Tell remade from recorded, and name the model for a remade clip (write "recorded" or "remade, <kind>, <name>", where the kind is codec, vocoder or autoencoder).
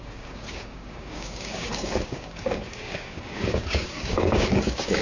remade, codec, DAC